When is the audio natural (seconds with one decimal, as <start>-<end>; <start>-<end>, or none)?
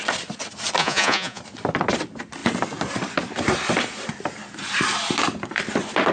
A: 0.0-0.8; 1.4-6.1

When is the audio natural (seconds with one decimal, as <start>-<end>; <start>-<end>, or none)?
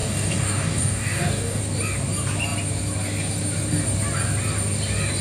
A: 1.6-5.2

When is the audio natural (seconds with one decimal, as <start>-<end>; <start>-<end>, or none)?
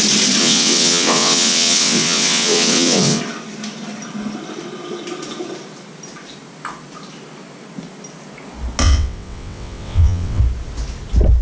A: 0.0-0.4; 3.2-8.8; 10.4-11.4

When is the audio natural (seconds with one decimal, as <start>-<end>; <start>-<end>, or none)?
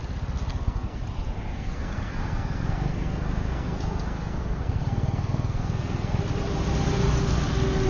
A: 0.0-0.5; 1.0-1.5; 6.2-7.9